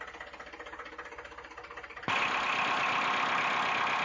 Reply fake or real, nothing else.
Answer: real